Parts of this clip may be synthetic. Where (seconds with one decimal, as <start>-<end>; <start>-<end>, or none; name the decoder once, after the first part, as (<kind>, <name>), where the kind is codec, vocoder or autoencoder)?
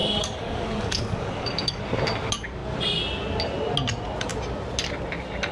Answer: 0.0-1.8 (codec, DAC)